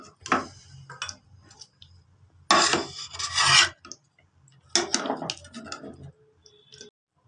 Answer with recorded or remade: recorded